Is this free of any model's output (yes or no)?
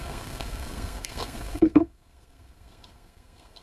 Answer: no